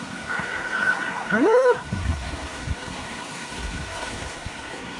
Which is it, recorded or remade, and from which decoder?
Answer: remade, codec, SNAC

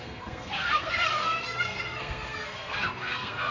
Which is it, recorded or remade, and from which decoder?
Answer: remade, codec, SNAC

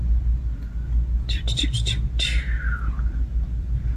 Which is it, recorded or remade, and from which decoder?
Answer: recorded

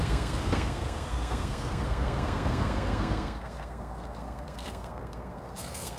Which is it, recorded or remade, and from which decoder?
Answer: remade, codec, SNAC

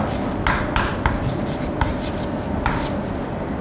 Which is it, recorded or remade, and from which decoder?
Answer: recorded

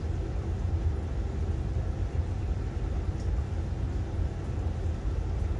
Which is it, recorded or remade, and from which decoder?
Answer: recorded